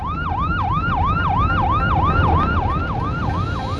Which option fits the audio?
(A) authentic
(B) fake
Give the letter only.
A